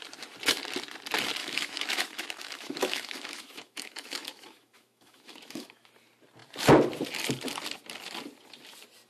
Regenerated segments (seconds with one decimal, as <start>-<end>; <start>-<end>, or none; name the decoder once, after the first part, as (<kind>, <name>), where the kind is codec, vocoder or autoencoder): 1.4-5.9 (autoencoder, DAC-VAE)